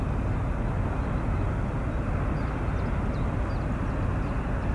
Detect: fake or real real